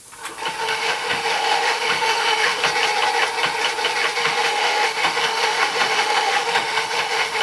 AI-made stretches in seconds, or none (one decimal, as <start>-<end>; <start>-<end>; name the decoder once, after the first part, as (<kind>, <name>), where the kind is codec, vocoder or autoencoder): 0.6-2.6 (autoencoder, DAC-VAE); 4.2-7.4